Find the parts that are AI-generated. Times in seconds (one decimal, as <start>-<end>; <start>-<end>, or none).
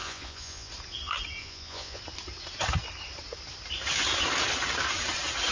0.0-0.7; 1.4-2.0